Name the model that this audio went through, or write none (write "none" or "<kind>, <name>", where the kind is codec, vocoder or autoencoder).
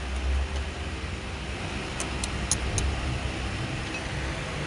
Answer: none